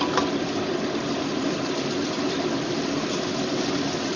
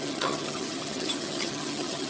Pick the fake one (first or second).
second